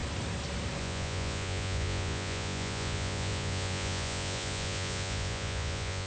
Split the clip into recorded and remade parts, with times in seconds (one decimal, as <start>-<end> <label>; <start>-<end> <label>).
0.0-0.8 recorded; 0.8-6.1 remade